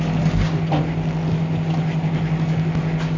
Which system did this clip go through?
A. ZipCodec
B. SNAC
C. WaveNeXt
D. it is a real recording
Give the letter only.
D